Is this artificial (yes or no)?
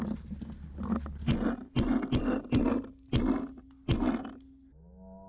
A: no